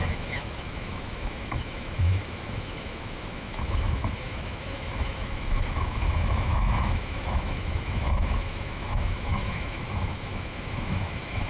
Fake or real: fake